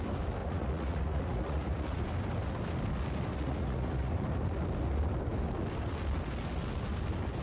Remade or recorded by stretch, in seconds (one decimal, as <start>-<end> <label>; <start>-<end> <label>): 0.0-0.4 recorded; 0.4-2.0 remade; 2.0-3.3 recorded; 3.3-4.1 remade; 4.1-7.4 recorded